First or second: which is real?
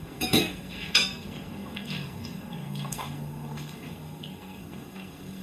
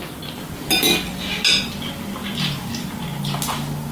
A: second